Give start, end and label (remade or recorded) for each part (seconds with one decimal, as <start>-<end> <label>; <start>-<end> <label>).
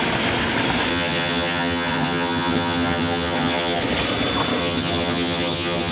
0.0-0.9 recorded; 0.9-3.8 remade; 3.8-4.6 recorded; 4.6-5.9 remade